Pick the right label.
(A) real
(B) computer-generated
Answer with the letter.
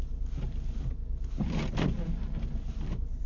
A